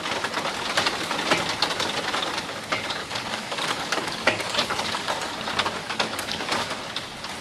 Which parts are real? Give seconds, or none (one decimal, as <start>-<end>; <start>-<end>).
0.0-3.0; 5.1-5.8; 6.8-7.4